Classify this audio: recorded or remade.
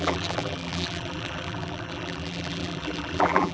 remade